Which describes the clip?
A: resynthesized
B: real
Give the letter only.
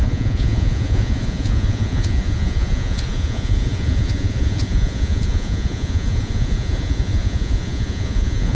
A